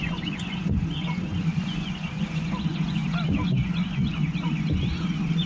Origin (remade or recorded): remade